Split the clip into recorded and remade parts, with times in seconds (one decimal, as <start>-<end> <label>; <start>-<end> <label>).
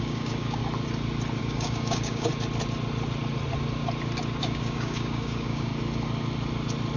0.0-0.6 remade; 0.6-1.4 recorded; 1.4-2.3 remade; 2.3-4.4 recorded; 4.4-5.7 remade; 5.7-7.0 recorded